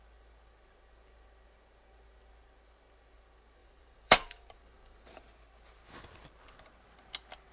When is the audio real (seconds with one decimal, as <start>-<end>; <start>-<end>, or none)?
0.0-3.6; 5.2-7.5